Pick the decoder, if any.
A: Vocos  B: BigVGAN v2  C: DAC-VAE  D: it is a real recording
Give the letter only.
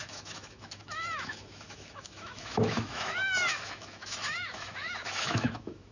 C